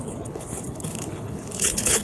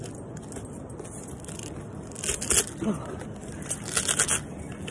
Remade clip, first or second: first